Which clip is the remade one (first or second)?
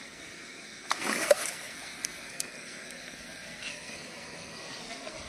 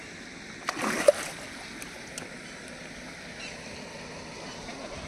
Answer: first